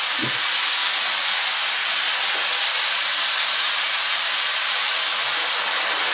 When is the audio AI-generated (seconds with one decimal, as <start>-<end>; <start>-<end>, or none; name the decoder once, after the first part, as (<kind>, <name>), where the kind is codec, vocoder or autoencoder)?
none